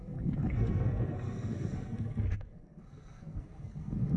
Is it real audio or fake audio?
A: fake